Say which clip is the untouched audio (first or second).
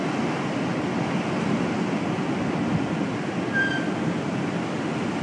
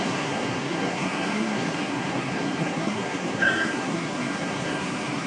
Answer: first